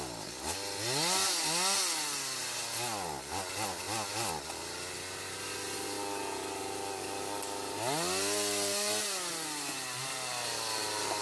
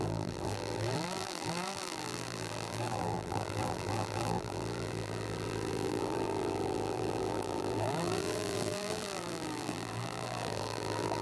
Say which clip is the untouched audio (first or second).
first